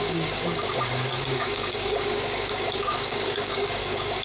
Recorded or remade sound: remade